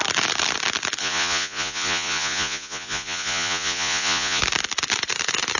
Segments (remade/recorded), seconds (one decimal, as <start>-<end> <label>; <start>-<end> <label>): 0.0-1.0 recorded; 1.0-4.4 remade; 4.4-5.6 recorded